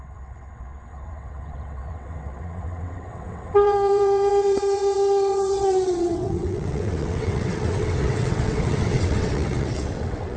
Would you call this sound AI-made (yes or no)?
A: yes